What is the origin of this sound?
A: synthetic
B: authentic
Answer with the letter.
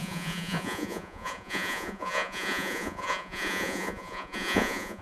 A